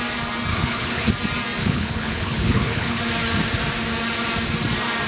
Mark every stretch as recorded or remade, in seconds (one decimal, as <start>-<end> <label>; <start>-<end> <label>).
0.0-0.5 recorded; 0.5-1.1 remade; 1.1-1.6 recorded; 1.6-3.0 remade; 3.0-5.1 recorded